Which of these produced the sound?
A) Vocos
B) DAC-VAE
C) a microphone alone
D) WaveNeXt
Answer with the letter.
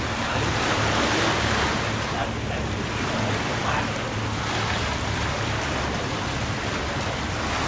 C